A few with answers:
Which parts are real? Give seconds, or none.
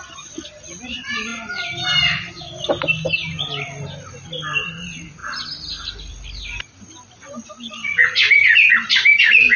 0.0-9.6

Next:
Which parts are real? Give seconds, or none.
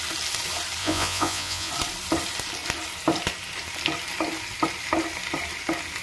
0.0-0.8; 1.7-6.0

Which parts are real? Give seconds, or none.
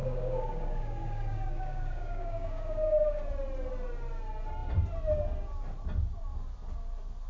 3.2-7.3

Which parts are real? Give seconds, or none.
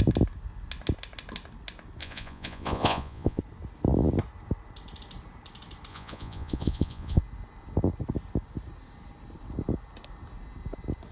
0.0-2.0; 3.4-5.9; 7.2-11.1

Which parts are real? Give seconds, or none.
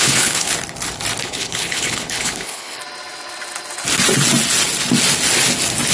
0.5-1.2; 2.8-5.9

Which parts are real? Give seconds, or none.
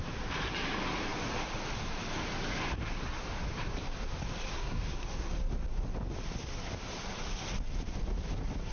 0.0-4.5; 5.3-8.7